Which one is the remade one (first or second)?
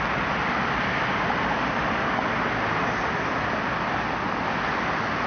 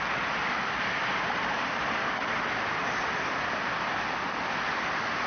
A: second